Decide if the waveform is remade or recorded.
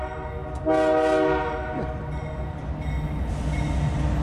recorded